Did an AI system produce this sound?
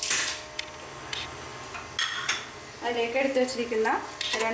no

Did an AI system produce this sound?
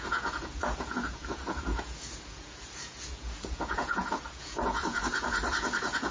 yes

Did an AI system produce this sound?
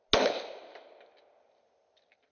no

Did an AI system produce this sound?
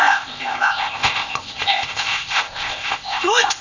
yes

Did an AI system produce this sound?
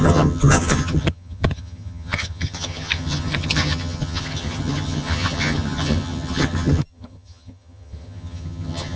yes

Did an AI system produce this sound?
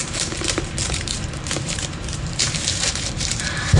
yes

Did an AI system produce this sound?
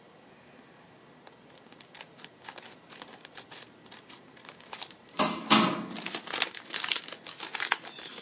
no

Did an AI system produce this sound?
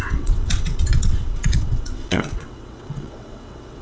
yes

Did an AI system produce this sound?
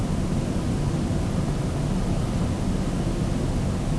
no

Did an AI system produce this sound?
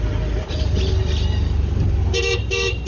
no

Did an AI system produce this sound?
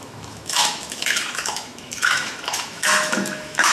yes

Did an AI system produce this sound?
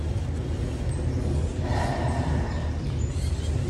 no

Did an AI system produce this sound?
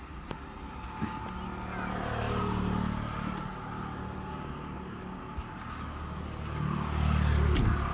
no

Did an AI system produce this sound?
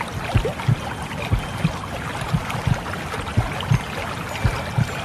no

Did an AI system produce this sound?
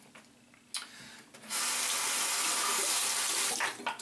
no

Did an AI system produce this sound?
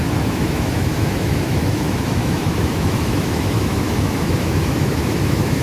yes